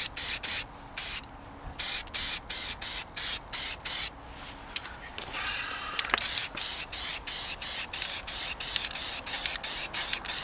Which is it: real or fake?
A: real